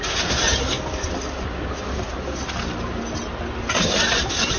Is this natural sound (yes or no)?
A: yes